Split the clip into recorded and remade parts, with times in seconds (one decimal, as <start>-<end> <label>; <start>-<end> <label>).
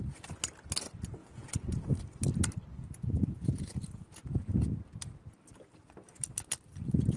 0.0-1.2 recorded; 1.2-1.9 remade; 1.9-2.7 recorded; 2.7-4.7 remade; 4.7-7.2 recorded